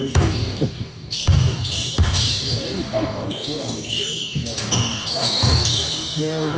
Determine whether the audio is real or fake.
fake